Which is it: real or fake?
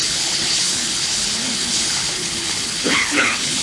fake